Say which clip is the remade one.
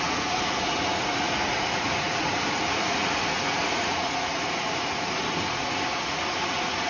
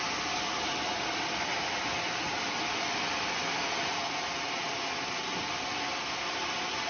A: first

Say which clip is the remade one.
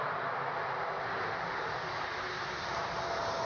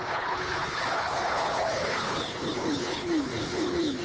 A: second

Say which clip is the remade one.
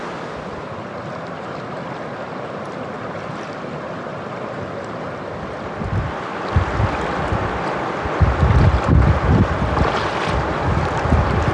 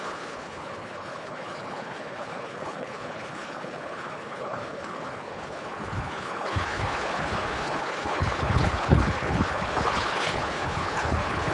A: second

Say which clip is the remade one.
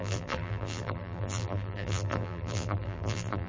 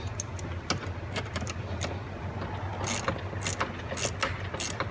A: first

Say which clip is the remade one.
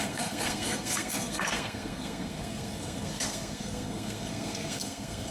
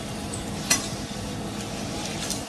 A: first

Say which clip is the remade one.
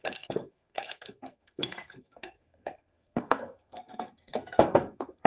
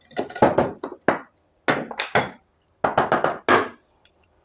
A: first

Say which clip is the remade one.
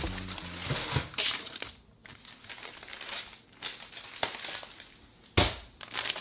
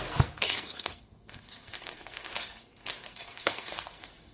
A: second